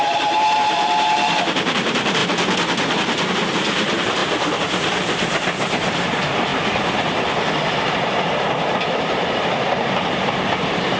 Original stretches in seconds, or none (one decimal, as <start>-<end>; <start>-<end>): 2.2-3.3; 6.5-7.5